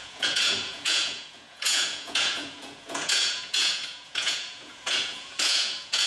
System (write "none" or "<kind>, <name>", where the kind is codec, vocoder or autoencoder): vocoder, Vocos